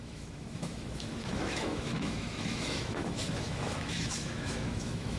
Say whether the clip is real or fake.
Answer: fake